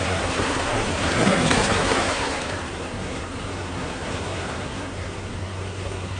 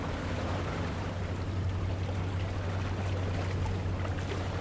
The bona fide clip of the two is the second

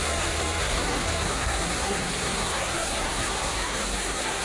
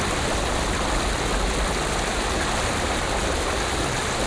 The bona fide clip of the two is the second